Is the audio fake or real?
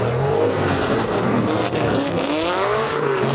fake